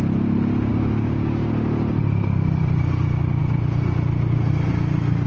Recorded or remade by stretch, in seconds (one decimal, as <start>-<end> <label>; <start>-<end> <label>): 0.0-0.7 recorded; 0.7-1.5 remade; 1.5-5.3 recorded